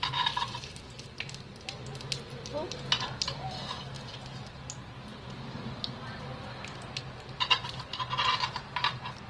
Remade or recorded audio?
recorded